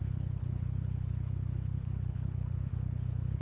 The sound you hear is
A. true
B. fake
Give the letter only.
B